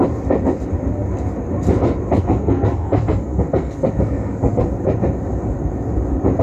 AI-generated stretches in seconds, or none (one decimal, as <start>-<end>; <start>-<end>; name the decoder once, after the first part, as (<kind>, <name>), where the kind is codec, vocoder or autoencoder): 2.2-4.6 (codec, SNAC)